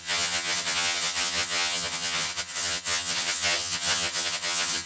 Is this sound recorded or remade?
remade